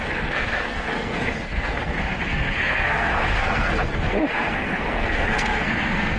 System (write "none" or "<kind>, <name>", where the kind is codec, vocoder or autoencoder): codec, SNAC